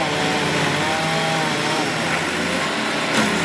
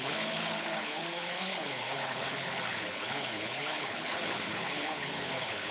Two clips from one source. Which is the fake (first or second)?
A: second